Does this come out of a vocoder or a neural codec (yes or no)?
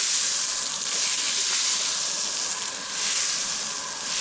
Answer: no